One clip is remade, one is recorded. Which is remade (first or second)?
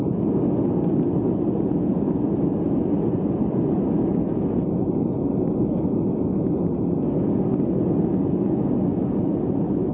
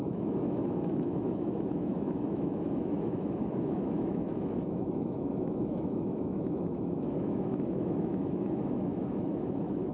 second